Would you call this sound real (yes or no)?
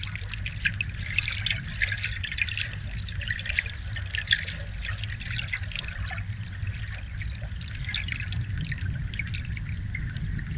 yes